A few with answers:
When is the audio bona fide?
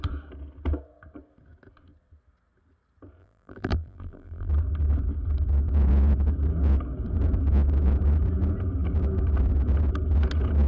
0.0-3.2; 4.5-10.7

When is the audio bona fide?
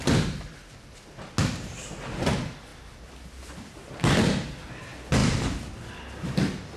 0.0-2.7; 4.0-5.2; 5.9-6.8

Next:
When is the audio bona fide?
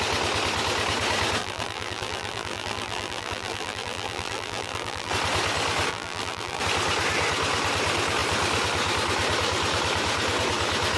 0.0-1.4; 5.1-5.9; 6.6-11.0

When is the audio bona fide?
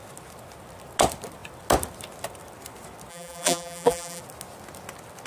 0.0-3.1; 4.2-5.3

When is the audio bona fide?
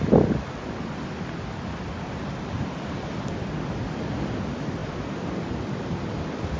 0.0-6.6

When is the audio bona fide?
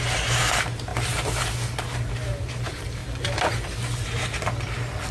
0.9-1.8; 3.0-5.1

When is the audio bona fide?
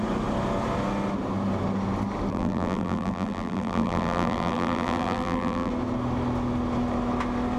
0.0-2.3; 5.7-7.6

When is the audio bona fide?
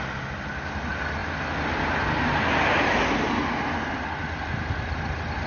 0.0-5.5